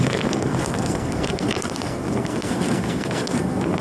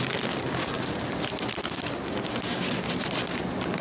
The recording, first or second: second